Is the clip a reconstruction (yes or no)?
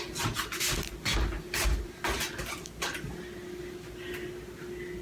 no